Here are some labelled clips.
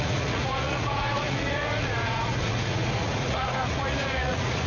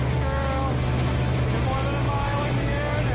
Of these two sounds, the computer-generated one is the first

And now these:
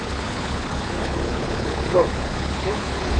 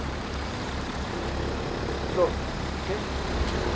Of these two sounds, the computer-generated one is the first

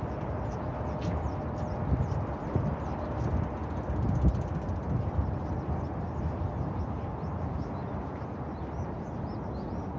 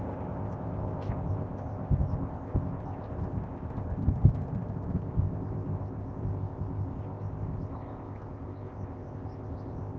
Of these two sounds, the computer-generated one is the second